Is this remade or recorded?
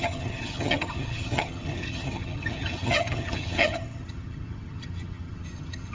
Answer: remade